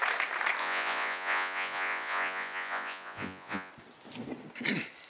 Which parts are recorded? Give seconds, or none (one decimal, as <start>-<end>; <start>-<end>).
0.0-0.6; 3.7-5.1